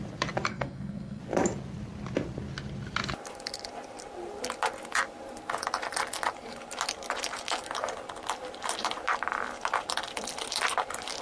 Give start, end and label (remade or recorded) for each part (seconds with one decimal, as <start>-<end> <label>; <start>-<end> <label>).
0.0-0.5 recorded; 0.5-1.2 remade; 1.2-11.2 recorded